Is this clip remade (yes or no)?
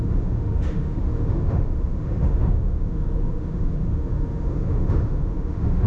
yes